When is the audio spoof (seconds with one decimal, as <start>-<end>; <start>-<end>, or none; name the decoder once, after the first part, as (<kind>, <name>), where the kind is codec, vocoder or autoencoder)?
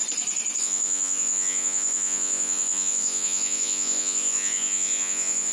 0.6-5.5 (vocoder, Vocos)